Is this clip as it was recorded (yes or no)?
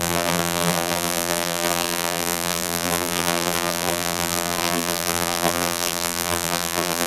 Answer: no